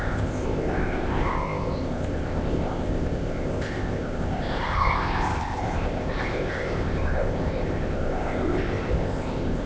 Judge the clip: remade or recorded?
remade